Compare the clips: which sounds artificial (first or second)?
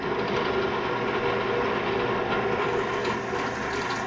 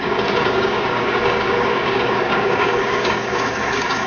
second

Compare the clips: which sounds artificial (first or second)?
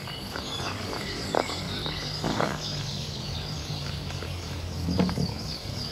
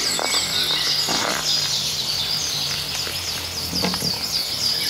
first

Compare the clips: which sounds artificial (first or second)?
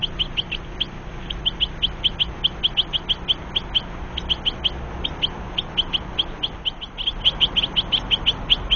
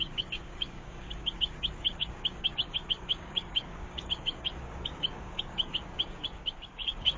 second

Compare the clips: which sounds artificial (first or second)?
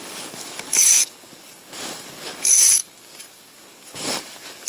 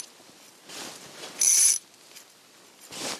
first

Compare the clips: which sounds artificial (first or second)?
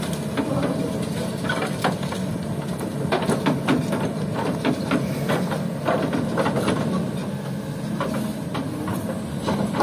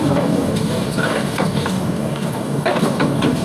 second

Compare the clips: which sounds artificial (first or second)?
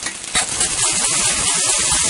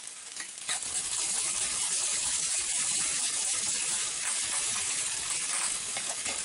second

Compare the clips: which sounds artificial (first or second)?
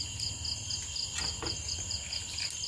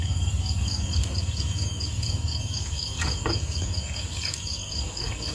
second